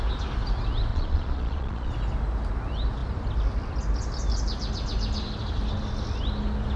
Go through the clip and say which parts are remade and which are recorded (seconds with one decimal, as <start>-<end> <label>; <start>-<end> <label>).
0.0-0.9 recorded; 0.9-1.9 remade; 1.9-6.8 recorded